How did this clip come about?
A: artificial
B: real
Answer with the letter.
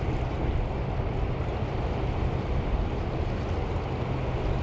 B